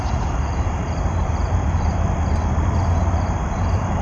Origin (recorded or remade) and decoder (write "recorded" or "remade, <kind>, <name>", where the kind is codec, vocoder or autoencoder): remade, vocoder, BigVGAN v2